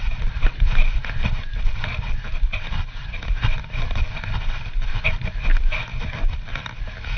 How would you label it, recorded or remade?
recorded